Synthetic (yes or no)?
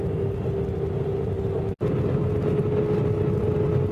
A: no